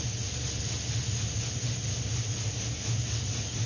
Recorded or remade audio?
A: recorded